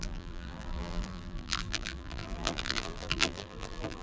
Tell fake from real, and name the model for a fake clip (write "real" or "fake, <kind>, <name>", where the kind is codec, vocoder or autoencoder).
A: fake, vocoder, BigVGAN v2